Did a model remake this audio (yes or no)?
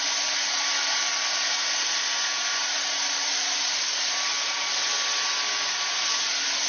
no